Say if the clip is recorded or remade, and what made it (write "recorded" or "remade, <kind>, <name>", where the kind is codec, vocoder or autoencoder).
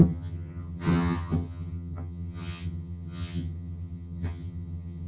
remade, vocoder, HiFi-GAN